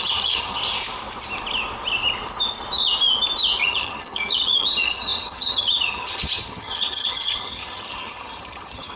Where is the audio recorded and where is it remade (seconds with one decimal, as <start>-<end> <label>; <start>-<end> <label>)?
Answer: 0.0-0.6 remade; 0.6-3.6 recorded; 3.6-9.0 remade